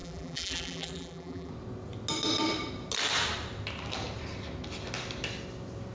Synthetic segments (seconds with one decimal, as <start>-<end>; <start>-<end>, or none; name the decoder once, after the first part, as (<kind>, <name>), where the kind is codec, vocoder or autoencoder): 0.0-1.5 (vocoder, BigVGAN v2)